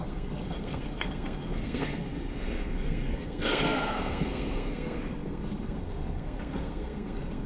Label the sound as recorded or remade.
remade